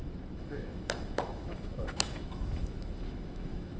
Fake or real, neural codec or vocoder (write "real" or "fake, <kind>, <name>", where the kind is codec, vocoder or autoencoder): fake, autoencoder, DAC-VAE